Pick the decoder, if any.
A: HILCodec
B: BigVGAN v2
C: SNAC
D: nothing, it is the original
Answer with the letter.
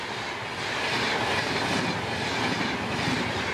D